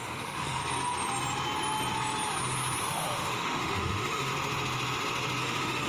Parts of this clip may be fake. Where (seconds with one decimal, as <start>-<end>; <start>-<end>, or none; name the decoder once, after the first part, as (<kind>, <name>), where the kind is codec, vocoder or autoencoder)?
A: 0.0-0.6 (autoencoder, DAC-VAE); 2.8-4.3; 5.4-5.9